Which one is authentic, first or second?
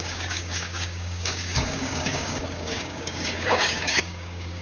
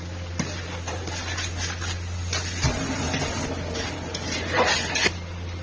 second